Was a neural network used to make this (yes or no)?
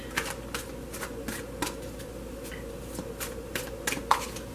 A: no